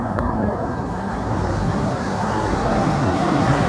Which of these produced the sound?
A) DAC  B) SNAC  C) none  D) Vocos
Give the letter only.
B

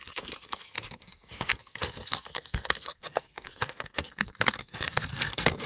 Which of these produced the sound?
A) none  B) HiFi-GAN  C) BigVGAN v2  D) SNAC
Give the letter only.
D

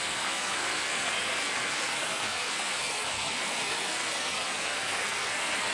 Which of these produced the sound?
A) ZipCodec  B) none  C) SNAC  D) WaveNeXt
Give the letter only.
C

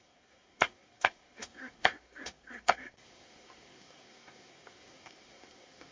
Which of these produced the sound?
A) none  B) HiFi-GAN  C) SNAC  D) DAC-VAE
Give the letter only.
C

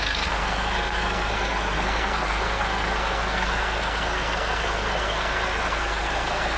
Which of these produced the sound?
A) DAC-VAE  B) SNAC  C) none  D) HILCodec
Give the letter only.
B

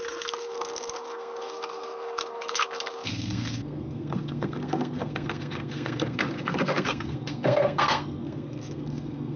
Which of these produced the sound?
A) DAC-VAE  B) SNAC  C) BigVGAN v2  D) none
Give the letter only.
B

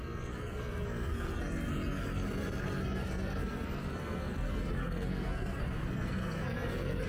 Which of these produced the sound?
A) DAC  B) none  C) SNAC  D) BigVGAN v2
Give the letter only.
C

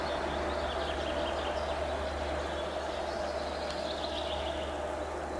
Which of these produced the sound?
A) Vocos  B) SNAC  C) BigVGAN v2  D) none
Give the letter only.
D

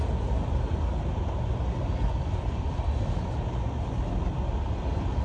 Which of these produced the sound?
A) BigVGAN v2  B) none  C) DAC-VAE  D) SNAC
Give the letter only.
B